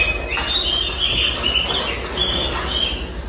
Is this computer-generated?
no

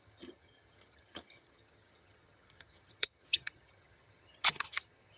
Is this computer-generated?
yes